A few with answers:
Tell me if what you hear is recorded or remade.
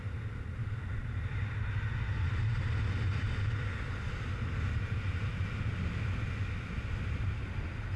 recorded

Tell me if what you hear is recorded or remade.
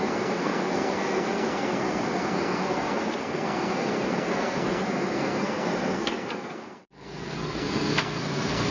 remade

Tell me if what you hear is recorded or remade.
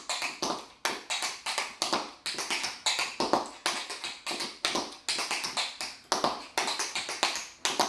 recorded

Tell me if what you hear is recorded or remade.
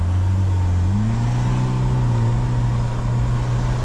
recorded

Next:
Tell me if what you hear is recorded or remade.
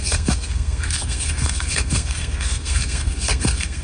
remade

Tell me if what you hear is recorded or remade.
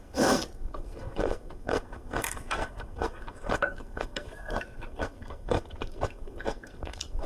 remade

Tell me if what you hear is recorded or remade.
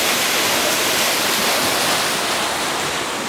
recorded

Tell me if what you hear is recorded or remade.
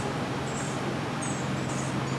recorded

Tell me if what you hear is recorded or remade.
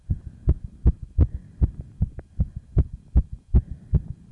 recorded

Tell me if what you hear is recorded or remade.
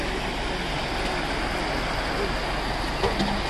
recorded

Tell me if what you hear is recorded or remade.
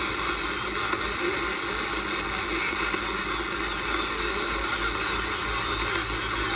recorded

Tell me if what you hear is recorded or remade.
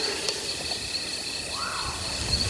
recorded